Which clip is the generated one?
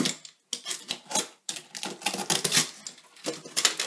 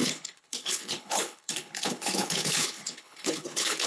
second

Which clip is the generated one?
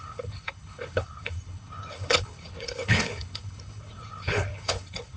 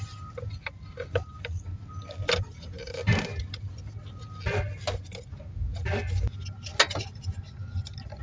first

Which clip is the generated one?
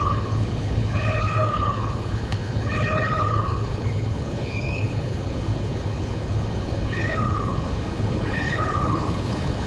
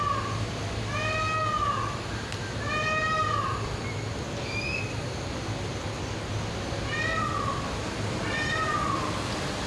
first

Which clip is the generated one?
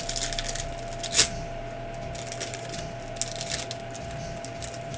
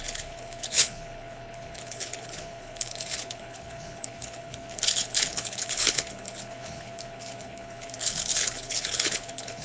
second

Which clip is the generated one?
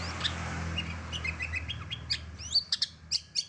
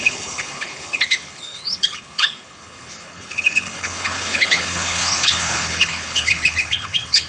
second